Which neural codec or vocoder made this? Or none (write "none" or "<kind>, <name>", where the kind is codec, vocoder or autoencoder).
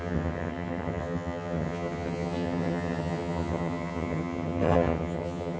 vocoder, HiFi-GAN